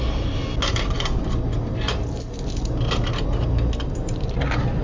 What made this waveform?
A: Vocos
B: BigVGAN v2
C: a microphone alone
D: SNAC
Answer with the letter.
C